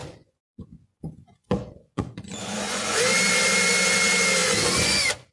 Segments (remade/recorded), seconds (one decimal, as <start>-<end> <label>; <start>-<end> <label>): 0.0-3.0 remade; 3.0-4.4 recorded; 4.4-5.3 remade